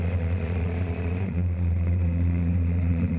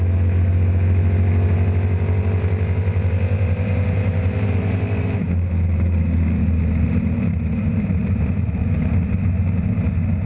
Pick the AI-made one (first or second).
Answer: first